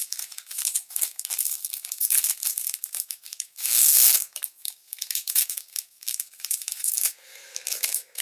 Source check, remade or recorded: remade